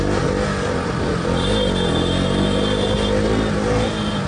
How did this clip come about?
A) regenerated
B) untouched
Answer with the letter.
B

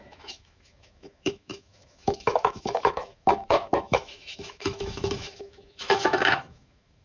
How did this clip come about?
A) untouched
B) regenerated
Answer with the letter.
B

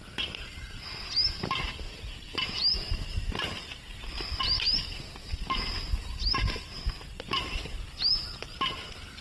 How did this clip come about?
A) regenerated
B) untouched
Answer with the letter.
B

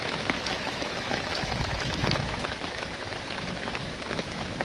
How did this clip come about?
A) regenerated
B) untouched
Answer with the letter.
A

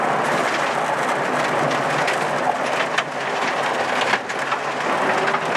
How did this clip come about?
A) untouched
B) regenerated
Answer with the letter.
A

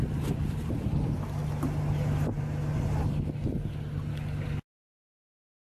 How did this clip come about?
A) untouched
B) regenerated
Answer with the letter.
A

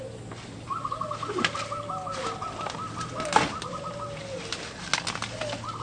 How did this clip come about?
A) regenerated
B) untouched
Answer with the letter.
B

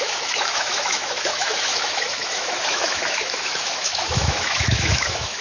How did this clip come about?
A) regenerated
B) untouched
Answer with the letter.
A